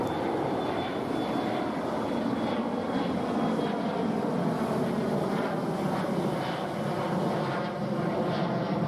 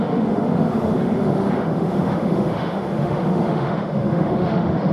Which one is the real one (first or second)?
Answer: first